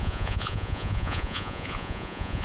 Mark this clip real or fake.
fake